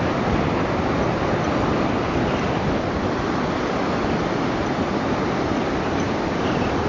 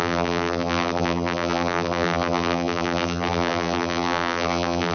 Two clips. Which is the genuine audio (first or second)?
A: first